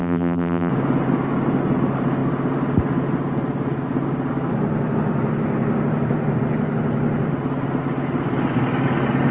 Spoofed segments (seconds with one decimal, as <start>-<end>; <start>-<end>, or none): 0.0-0.7